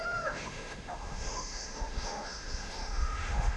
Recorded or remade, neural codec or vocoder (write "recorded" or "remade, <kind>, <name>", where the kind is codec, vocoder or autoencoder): remade, autoencoder, DAC-VAE